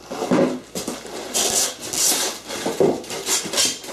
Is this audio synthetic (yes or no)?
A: no